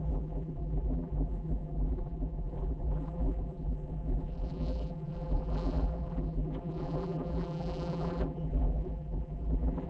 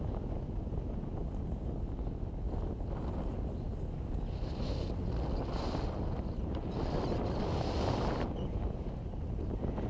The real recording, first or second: second